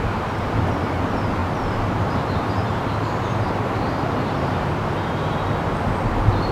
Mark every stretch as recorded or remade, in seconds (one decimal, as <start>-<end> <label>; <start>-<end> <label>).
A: 0.0-1.4 recorded; 1.4-4.7 remade; 4.7-6.5 recorded